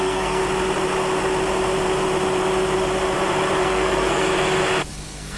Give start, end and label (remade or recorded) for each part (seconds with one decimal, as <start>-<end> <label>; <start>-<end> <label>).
0.0-0.4 remade; 0.4-3.6 recorded; 3.6-4.3 remade; 4.3-4.9 recorded; 4.9-5.4 remade